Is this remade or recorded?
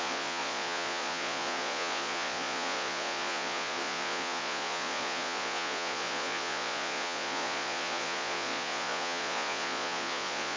remade